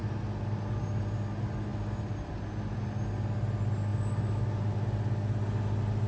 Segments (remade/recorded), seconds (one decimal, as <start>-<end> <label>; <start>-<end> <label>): 0.0-6.1 recorded